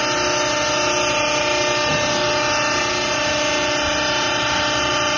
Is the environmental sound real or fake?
real